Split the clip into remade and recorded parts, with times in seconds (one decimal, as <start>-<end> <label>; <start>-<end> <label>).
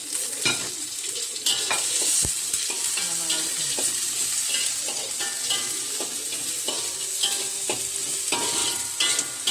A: 0.0-9.5 recorded